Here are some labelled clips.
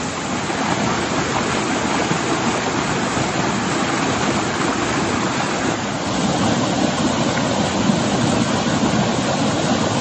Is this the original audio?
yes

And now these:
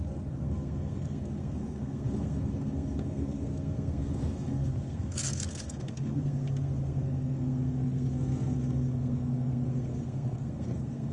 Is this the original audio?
no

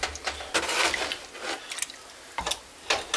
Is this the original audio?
yes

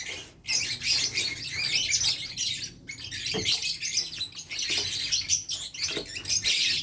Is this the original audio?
yes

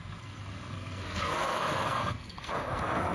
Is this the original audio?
no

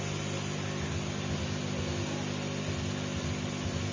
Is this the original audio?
yes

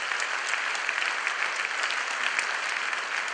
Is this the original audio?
yes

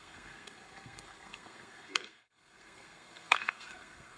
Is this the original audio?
no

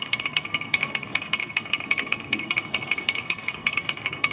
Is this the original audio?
no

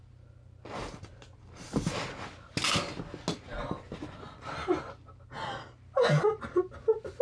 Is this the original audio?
yes